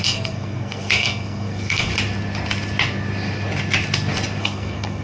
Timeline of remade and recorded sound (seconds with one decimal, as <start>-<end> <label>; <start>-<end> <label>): 0.0-1.9 remade; 1.9-4.4 recorded; 4.4-5.0 remade